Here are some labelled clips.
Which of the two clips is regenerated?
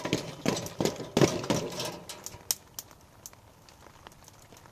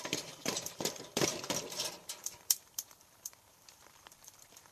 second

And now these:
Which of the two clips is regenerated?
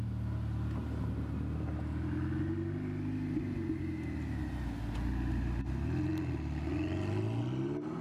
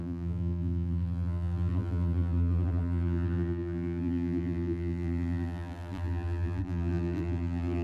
second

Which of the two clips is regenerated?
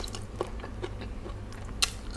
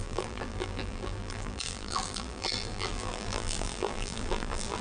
second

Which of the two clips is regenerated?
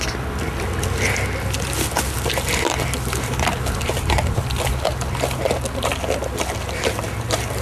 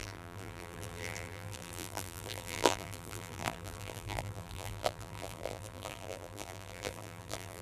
second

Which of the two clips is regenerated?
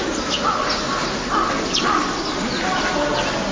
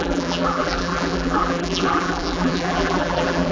second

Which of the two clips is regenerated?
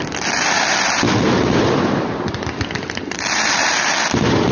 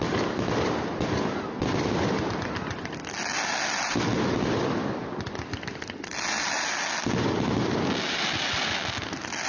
first